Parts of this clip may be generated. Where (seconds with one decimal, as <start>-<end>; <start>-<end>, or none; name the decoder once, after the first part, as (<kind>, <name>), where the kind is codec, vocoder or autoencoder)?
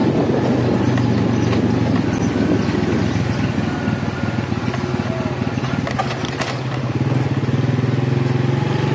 none